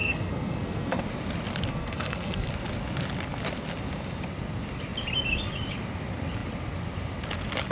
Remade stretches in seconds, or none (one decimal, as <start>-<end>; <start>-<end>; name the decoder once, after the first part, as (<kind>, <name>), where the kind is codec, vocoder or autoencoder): 0.0-1.0 (codec, SNAC); 1.7-2.5